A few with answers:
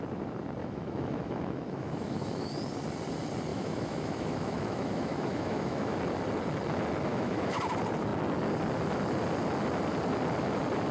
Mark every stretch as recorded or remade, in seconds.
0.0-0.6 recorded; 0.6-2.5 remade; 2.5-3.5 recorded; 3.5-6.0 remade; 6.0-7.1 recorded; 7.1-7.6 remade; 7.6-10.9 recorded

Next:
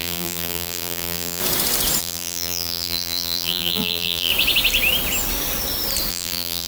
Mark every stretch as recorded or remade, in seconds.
0.0-1.4 remade; 1.4-2.0 recorded; 2.0-4.3 remade; 4.3-6.1 recorded; 6.1-6.7 remade